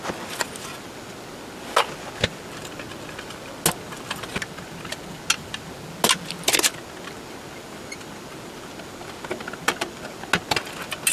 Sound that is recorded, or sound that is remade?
recorded